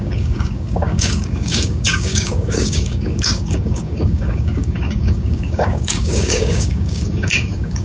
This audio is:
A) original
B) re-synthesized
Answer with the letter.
B